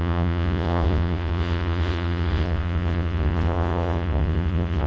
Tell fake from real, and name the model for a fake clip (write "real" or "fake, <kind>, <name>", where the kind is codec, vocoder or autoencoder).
fake, vocoder, Vocos